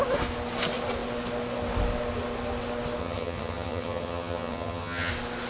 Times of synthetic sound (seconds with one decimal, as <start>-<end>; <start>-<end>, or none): 3.0-5.1